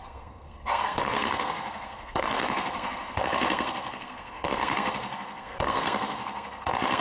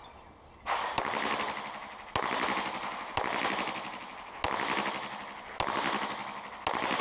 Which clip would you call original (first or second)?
second